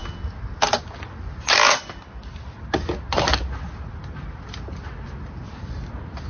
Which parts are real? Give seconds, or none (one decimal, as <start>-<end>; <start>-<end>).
0.0-6.3

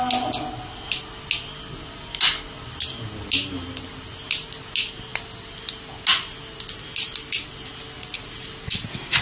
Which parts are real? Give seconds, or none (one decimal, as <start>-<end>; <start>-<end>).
0.0-5.1; 5.7-9.2

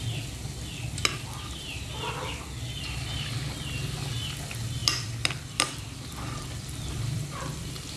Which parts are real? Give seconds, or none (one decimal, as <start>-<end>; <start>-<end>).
0.0-4.8; 7.6-8.0

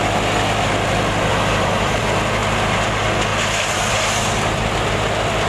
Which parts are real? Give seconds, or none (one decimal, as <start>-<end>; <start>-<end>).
0.0-1.3; 2.0-3.3; 3.9-5.5

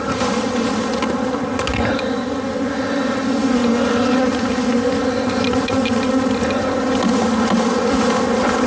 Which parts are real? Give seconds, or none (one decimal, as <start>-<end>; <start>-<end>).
0.0-8.7

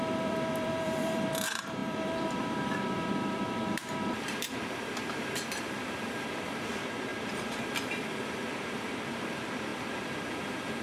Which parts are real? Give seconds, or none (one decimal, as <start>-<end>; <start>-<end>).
none

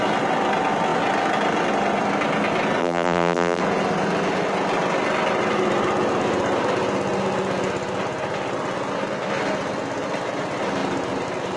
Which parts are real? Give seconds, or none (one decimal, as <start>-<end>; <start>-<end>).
0.0-2.8; 3.6-11.6